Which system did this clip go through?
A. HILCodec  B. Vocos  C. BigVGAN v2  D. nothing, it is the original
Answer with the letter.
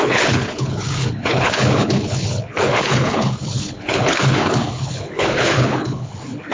A